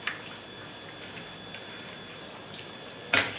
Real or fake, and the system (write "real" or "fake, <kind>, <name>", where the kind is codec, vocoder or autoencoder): real